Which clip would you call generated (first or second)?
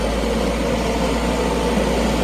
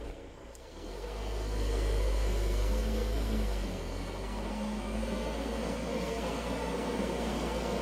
second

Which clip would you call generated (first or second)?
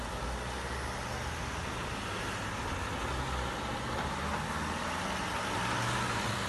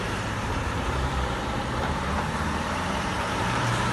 second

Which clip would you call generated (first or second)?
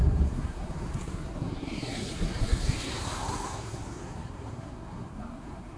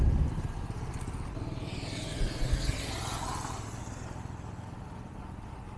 first